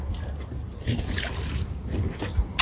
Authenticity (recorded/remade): recorded